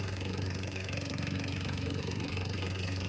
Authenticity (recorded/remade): remade